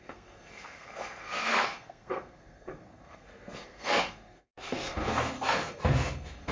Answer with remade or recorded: remade